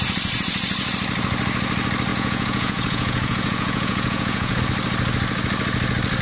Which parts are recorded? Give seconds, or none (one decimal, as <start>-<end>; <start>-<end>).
0.0-2.1; 4.6-6.2